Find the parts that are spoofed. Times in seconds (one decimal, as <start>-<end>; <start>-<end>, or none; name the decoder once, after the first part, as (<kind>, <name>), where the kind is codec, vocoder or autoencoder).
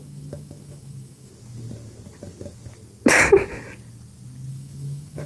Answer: 0.0-1.3 (autoencoder, DAC-VAE); 4.5-5.3